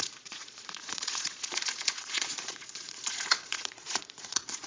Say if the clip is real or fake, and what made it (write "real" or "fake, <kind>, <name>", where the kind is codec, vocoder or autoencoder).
fake, vocoder, Vocos